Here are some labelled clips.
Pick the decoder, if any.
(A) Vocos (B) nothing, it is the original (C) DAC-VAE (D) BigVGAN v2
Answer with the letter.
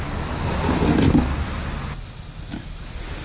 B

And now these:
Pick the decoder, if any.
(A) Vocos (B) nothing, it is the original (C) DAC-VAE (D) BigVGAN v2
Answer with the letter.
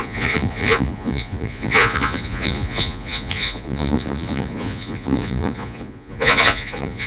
A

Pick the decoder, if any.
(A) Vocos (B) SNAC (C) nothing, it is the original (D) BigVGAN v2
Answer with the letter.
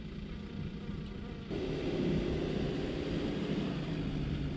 C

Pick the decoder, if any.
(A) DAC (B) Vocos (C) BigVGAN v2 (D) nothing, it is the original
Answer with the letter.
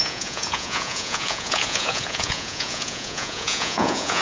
B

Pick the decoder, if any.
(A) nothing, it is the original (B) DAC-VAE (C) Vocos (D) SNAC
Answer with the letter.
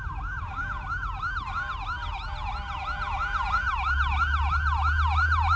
A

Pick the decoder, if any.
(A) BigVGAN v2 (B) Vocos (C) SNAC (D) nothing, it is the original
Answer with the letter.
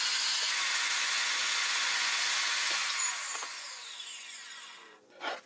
B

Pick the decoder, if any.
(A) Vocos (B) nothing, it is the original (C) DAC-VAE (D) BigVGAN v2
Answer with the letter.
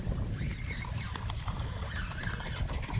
B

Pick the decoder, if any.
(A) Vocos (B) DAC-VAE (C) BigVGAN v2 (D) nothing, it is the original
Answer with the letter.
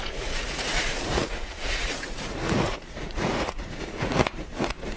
A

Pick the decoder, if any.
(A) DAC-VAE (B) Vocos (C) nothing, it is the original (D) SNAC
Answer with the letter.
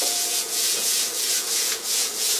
B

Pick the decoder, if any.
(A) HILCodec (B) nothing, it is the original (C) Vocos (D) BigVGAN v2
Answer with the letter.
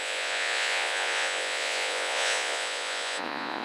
C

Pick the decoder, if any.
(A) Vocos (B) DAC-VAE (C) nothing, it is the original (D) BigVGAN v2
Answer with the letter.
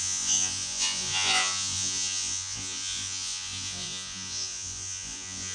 A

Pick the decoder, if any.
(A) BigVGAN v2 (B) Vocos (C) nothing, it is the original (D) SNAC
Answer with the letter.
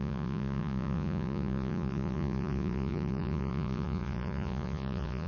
B